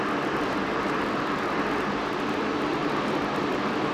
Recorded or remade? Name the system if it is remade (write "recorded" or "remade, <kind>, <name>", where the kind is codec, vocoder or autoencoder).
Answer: recorded